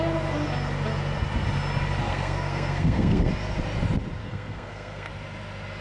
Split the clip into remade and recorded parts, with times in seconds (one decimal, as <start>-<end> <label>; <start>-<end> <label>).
0.0-2.1 recorded; 2.1-3.3 remade; 3.3-4.2 recorded; 4.2-5.1 remade; 5.1-5.8 recorded